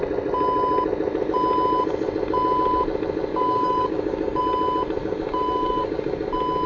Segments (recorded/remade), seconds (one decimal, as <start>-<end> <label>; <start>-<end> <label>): 0.0-3.3 recorded; 3.3-4.4 remade; 4.4-5.0 recorded; 5.0-6.3 remade; 6.3-6.7 recorded